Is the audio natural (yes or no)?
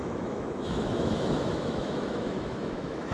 no